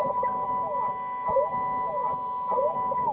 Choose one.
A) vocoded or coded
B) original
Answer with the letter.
B